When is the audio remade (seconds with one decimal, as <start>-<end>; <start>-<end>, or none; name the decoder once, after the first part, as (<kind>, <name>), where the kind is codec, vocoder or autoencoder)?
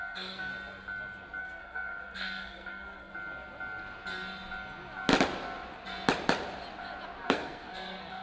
0.0-0.5 (codec, SNAC); 1.4-3.1; 7.3-8.2